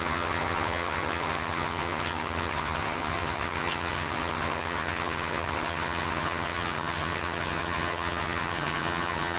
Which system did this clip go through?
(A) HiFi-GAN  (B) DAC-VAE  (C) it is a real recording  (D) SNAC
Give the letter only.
A